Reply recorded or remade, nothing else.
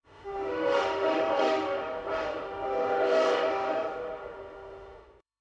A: remade